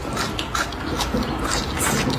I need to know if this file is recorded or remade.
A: recorded